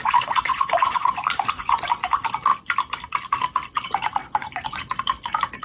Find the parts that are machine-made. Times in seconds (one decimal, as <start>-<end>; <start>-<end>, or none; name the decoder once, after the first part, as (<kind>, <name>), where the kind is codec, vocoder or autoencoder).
0.0-1.8 (vocoder, Vocos); 4.2-4.8